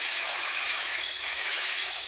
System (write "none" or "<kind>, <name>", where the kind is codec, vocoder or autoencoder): autoencoder, DAC-VAE